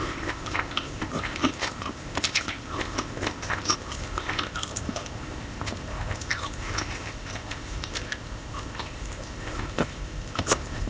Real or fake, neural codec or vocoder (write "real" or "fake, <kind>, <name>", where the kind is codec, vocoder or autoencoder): fake, codec, ZipCodec